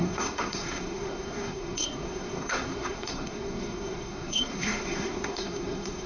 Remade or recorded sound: remade